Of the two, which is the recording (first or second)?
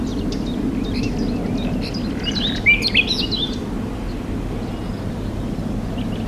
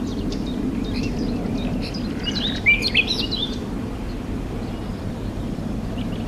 first